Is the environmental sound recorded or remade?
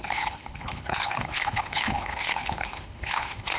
remade